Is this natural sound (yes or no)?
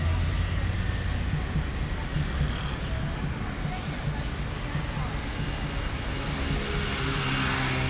yes